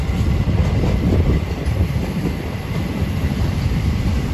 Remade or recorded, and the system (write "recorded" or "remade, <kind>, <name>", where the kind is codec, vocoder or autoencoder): remade, vocoder, BigVGAN v2